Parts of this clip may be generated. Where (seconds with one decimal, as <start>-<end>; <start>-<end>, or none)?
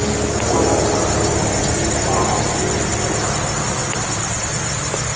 none